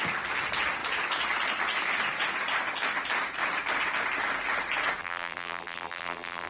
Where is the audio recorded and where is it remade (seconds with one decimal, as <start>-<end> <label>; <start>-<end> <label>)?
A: 0.0-5.0 recorded; 5.0-6.5 remade